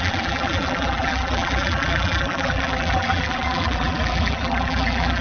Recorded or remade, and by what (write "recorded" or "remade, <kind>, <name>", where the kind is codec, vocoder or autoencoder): remade, vocoder, BigVGAN v2